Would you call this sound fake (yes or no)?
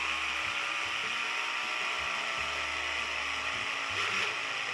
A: no